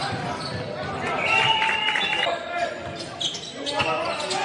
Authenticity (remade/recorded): recorded